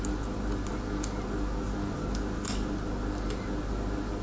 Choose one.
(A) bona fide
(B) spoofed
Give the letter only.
A